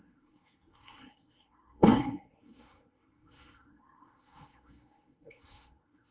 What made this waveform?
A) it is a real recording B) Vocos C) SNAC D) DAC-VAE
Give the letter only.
C